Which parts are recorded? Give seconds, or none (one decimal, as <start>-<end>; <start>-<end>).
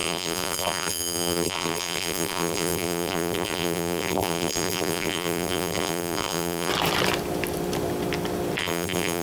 6.7-8.6